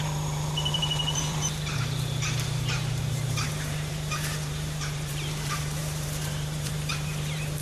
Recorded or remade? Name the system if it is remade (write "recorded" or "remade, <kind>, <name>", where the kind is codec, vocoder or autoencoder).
remade, vocoder, BigVGAN v2